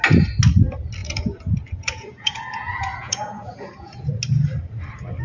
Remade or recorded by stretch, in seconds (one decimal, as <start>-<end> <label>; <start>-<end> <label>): 0.0-1.0 recorded; 1.0-4.1 remade; 4.1-5.2 recorded